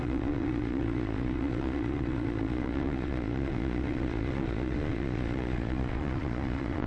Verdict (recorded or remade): remade